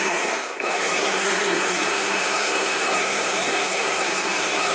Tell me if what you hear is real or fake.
fake